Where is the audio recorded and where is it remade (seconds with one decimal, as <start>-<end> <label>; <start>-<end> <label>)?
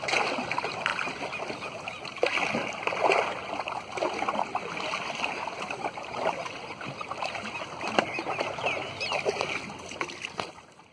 0.0-10.9 recorded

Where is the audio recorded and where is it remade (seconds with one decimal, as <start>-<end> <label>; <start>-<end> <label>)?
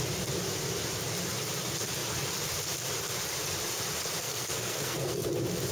0.0-4.2 recorded; 4.2-5.3 remade; 5.3-5.7 recorded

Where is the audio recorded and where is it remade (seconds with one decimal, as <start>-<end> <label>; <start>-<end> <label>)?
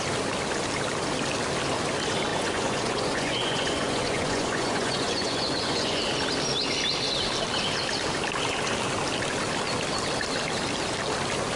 0.0-2.3 recorded; 2.3-6.0 remade; 6.0-11.6 recorded